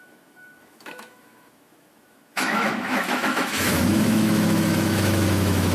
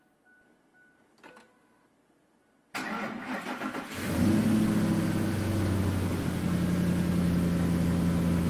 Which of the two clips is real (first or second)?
second